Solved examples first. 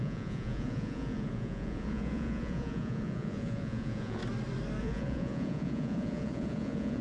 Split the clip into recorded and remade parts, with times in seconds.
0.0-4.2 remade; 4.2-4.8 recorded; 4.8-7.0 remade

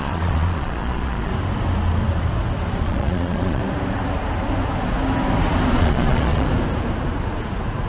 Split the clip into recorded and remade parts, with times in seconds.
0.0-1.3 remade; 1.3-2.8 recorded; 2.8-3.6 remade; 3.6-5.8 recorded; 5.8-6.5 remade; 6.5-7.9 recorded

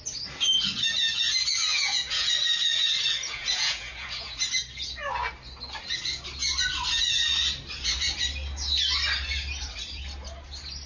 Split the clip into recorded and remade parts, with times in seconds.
0.0-1.7 recorded; 1.7-2.3 remade; 2.3-3.2 recorded; 3.2-4.4 remade; 4.4-10.9 recorded